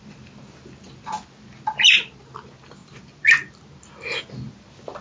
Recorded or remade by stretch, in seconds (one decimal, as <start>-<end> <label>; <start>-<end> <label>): 0.0-5.0 recorded